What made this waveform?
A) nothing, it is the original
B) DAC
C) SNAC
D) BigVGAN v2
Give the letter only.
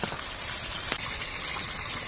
A